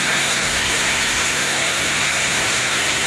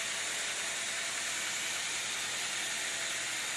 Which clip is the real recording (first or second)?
second